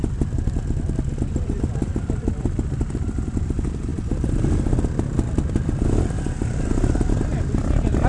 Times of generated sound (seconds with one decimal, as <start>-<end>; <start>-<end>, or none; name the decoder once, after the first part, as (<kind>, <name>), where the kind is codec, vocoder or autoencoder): none